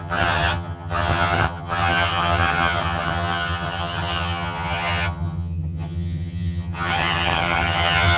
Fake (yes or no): yes